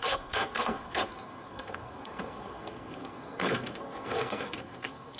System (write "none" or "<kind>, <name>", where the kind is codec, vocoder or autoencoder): codec, SNAC